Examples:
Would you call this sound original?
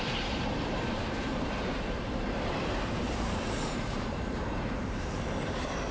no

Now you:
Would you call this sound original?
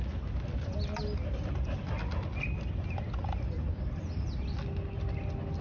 yes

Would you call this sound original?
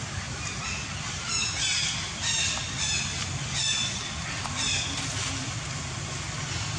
yes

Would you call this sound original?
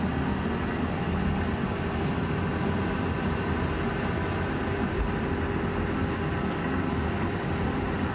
yes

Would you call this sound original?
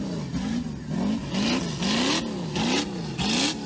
yes